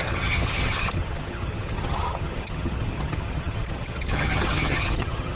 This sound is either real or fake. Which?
fake